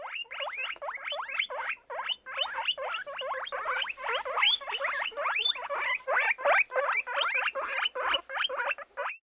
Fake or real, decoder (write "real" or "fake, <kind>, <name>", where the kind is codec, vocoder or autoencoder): real